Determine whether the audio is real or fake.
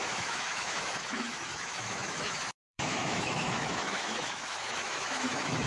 fake